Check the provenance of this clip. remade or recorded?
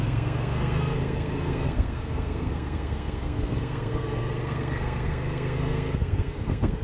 remade